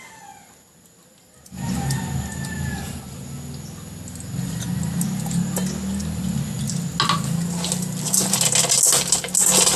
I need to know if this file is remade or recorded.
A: recorded